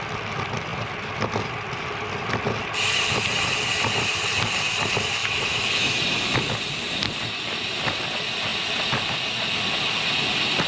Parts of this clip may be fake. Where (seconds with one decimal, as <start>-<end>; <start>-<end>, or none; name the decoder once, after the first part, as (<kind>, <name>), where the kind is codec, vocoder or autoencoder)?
5.2-6.0 (autoencoder, DAC-VAE)